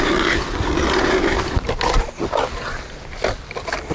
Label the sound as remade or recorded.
recorded